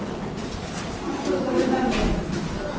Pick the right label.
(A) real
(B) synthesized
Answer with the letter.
A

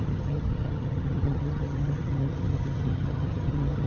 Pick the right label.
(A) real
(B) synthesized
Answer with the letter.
B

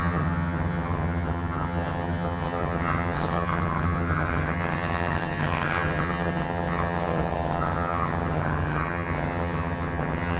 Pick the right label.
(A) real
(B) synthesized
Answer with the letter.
B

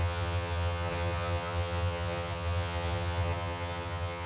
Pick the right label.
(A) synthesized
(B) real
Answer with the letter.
A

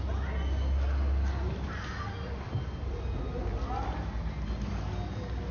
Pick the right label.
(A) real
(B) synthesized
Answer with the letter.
A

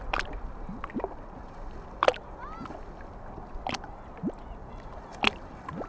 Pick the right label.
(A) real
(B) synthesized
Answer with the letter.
A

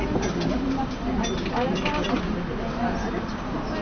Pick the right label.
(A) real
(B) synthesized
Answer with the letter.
A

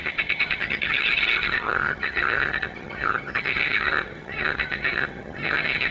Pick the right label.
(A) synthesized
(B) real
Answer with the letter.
A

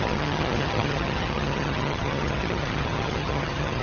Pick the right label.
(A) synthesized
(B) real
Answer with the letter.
A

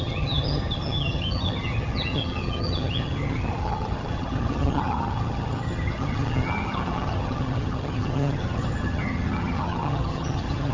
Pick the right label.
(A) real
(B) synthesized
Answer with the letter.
B